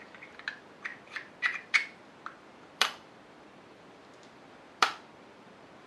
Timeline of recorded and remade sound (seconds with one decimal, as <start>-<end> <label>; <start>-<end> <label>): 0.0-5.9 remade